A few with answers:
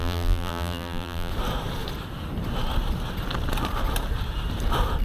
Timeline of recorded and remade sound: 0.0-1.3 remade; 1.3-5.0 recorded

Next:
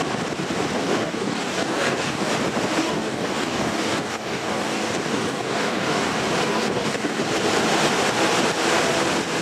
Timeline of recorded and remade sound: 0.0-0.8 recorded; 0.8-2.3 remade; 2.3-2.8 recorded; 2.8-6.1 remade; 6.1-6.5 recorded; 6.5-7.2 remade; 7.2-9.4 recorded

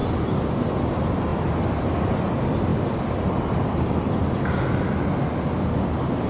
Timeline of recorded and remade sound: 0.0-6.3 recorded

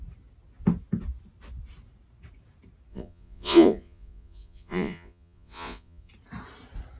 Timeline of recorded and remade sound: 0.0-2.9 recorded; 2.9-6.1 remade; 6.1-7.0 recorded

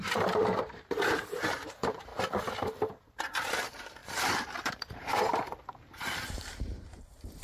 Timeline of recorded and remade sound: 0.0-2.1 remade; 2.1-3.2 recorded; 3.2-7.4 remade